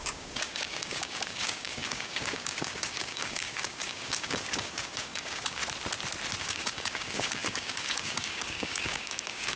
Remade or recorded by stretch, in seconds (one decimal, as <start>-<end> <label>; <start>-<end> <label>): 0.0-5.6 remade; 5.6-6.4 recorded; 6.4-9.6 remade